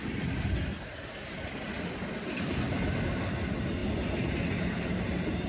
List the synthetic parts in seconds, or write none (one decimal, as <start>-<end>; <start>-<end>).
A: none